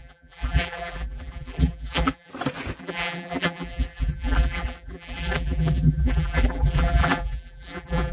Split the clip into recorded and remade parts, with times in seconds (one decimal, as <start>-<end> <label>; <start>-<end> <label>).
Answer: 0.0-2.3 remade; 2.3-2.8 recorded; 2.8-8.1 remade